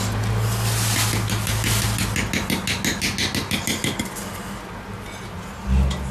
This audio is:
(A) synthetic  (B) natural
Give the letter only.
B